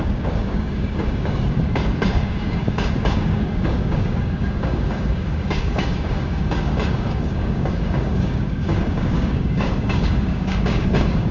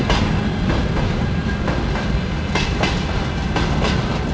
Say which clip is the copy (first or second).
first